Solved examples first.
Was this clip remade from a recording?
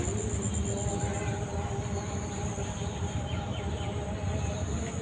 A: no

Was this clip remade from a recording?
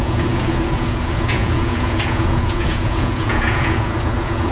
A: yes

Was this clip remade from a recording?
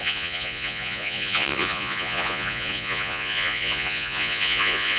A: yes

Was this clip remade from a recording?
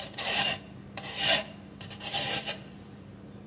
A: yes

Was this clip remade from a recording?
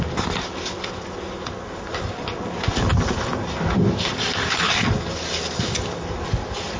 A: no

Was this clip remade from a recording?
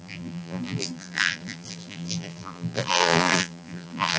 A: yes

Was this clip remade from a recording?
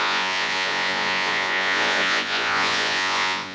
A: yes